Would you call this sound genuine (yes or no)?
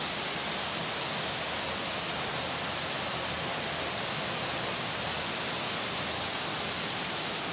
yes